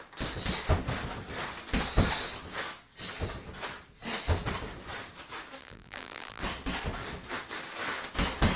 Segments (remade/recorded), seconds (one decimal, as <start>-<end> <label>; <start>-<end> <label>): 0.0-5.6 recorded; 5.6-6.4 remade; 6.4-8.6 recorded